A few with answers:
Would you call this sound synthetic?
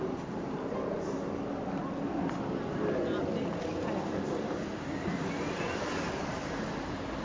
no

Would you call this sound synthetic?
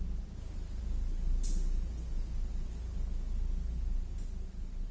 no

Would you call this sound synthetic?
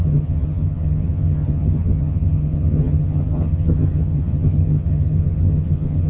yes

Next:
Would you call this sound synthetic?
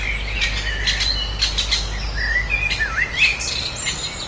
no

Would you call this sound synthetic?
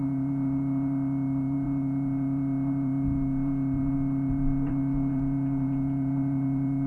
yes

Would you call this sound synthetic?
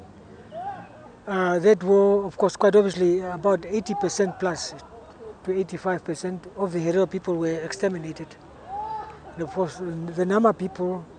no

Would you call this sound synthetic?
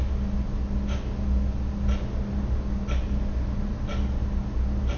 no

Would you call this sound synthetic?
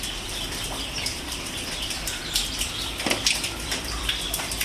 yes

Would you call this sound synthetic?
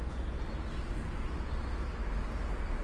no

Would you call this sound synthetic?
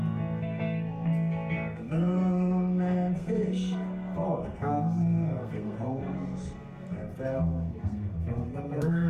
yes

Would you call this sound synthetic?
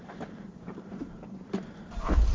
yes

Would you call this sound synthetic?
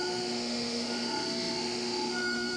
yes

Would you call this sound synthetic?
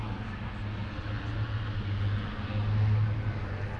no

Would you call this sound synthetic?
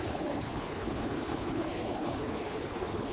yes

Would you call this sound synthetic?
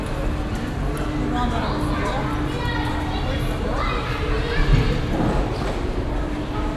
no